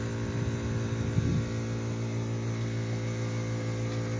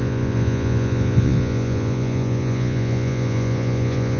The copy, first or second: second